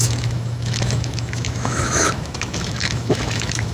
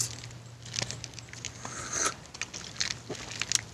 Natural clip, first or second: second